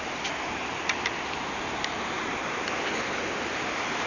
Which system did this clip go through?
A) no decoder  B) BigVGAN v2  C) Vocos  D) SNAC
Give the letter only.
A